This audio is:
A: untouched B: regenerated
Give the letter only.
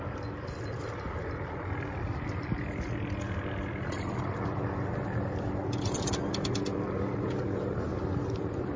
A